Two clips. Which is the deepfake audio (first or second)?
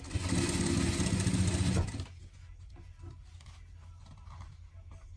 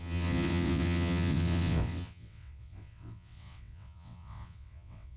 second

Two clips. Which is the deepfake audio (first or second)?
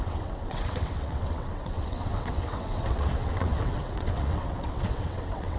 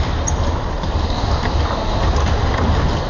first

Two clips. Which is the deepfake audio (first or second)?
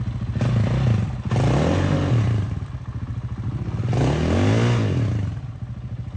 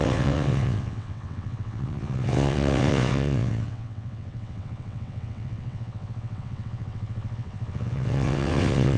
second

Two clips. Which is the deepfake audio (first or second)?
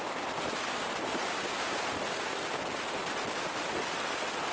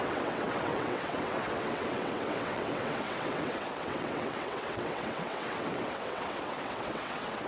second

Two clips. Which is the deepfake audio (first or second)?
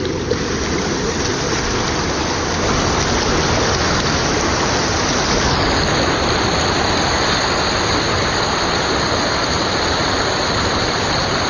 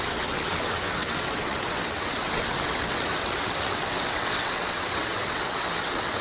second